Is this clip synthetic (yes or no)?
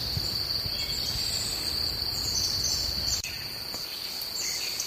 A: no